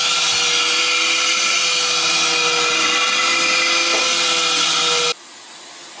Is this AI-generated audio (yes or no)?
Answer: no